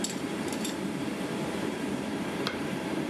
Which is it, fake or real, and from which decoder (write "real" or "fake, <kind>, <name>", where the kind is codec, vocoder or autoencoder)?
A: fake, vocoder, BigVGAN v2